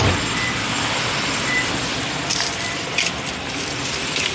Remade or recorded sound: remade